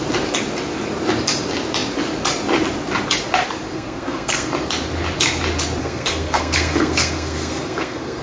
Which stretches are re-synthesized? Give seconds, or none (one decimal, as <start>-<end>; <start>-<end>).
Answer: 3.7-4.5; 5.8-8.2